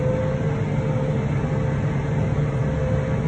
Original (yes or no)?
yes